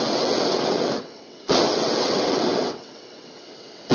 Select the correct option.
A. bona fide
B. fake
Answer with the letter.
B